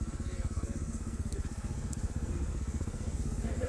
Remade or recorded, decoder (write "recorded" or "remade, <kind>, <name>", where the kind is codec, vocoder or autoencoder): remade, codec, SNAC